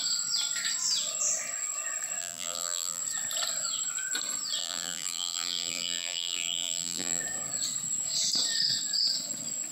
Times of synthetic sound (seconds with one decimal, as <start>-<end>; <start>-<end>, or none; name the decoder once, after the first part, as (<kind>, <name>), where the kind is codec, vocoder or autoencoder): 2.2-3.0 (vocoder, BigVGAN v2); 4.6-7.2